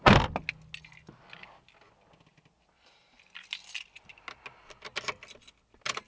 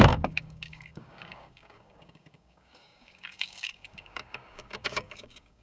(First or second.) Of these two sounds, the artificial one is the second